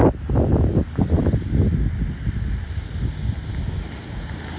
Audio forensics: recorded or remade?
recorded